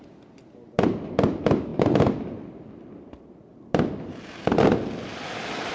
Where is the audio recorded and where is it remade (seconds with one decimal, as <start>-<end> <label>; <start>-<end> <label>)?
0.0-5.7 recorded